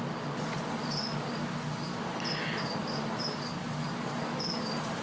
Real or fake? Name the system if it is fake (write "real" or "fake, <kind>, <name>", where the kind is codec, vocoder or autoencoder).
real